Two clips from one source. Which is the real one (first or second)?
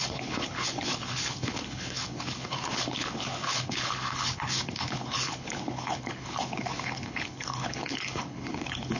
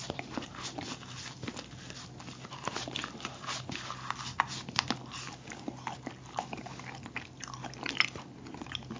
second